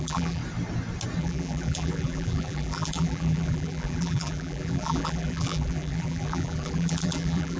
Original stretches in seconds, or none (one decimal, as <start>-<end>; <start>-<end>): 0.4-1.2